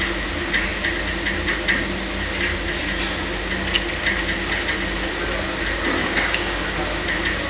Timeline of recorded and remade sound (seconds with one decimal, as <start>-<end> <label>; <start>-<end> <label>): 0.0-6.0 recorded; 6.0-6.6 remade; 6.6-7.5 recorded